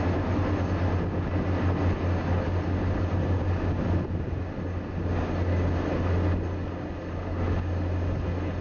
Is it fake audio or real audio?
real